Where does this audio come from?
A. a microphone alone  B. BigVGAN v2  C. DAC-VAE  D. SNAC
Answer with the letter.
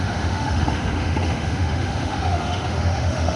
C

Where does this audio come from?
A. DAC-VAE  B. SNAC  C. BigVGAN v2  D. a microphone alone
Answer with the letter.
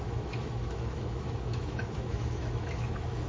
A